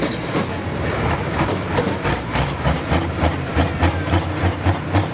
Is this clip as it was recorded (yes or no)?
no